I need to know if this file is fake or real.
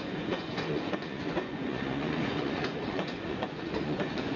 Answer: fake